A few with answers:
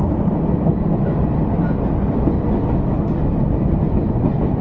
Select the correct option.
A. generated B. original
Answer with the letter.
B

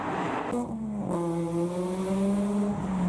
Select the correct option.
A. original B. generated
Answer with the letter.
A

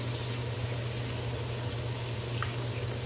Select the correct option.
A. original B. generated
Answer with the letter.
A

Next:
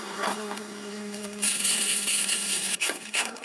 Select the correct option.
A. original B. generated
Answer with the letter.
B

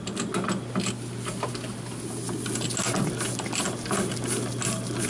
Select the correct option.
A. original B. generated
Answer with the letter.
A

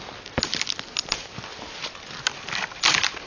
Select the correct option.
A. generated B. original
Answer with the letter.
B